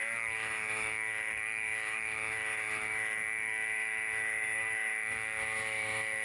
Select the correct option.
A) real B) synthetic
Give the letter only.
B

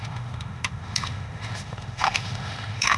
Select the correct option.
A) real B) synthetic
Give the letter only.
B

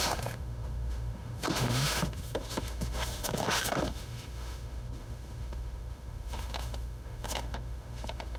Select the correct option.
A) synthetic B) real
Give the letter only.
A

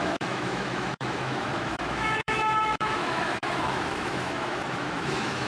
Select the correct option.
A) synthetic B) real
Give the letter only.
A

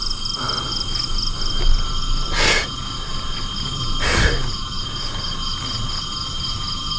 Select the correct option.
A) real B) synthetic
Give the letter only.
A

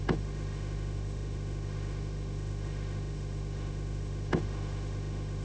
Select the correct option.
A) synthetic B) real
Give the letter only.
A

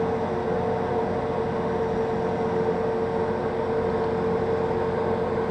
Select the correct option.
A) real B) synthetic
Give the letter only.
A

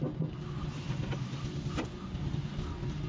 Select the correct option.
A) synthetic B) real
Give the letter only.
B